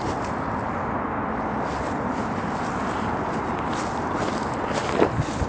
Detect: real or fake real